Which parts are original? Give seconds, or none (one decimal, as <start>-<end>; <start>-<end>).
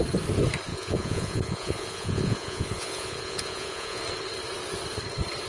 0.0-0.7; 4.0-5.5